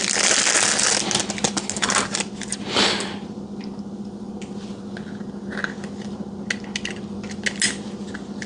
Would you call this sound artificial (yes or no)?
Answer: no